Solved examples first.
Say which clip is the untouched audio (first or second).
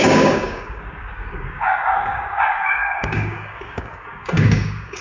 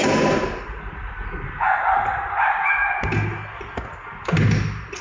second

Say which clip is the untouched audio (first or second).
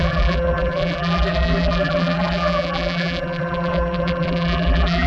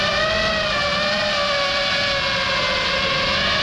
second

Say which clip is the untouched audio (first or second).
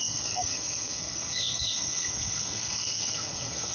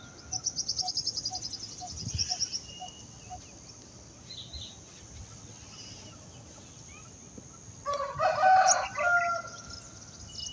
second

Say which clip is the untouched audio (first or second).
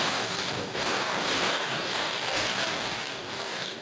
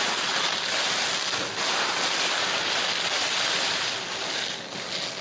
second